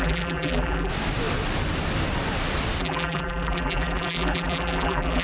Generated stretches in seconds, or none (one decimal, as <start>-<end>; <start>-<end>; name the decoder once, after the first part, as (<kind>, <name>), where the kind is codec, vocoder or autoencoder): 0.0-0.9 (vocoder, BigVGAN v2); 2.8-5.2